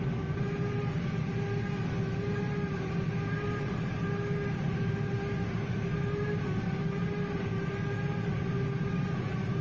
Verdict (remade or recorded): recorded